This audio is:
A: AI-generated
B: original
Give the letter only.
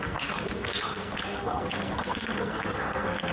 A